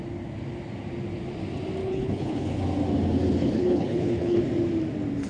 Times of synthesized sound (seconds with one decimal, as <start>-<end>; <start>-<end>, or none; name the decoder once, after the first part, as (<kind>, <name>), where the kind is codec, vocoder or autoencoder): 1.8-2.6 (codec, HILCodec); 3.4-4.4